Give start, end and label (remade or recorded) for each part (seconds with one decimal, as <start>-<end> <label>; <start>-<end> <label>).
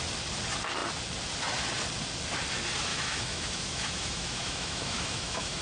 0.0-2.9 recorded; 2.9-5.6 remade